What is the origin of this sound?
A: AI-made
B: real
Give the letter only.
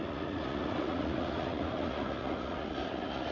A